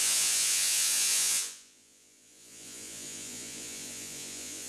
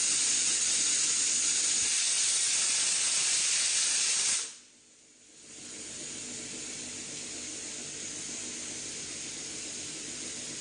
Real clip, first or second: second